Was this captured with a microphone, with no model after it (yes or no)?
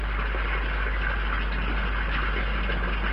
yes